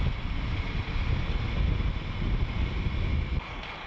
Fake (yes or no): no